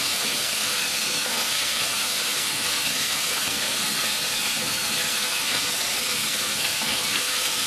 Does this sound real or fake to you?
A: fake